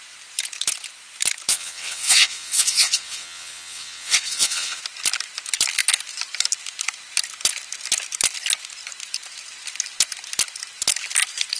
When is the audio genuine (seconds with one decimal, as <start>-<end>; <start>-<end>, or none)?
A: 0.0-1.5; 4.8-11.6